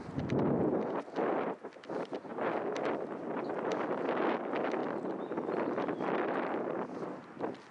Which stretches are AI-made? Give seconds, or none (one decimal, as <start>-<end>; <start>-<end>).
none